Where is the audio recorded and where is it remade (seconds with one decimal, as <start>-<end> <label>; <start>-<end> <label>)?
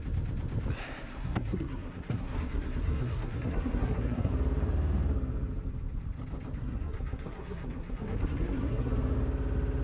0.0-1.1 recorded; 1.1-4.3 remade; 4.3-6.6 recorded; 6.6-8.9 remade; 8.9-9.8 recorded